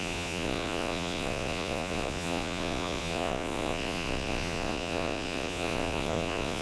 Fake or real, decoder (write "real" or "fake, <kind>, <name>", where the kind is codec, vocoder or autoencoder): fake, vocoder, Vocos